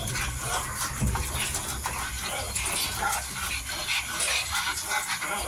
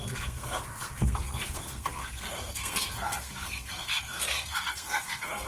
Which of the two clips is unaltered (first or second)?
first